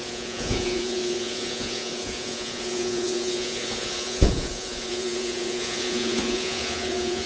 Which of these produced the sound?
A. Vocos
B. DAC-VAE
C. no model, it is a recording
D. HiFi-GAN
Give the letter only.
A